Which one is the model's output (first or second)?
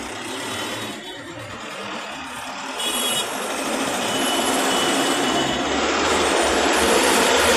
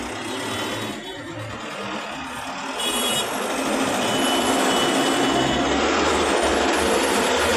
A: first